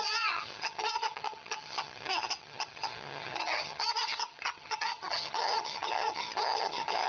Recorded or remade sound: remade